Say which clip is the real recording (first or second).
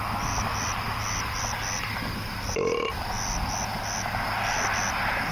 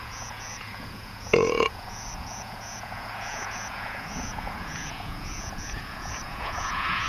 first